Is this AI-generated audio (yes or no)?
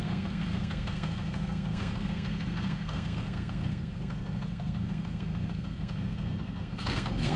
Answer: yes